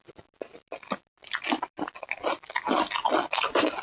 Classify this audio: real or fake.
real